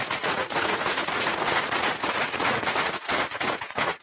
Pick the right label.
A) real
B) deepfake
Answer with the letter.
B